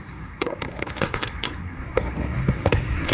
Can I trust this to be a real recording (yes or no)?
no